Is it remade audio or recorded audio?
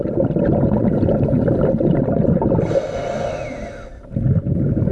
recorded